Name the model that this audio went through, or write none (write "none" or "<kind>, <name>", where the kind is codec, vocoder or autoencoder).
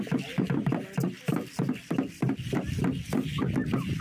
none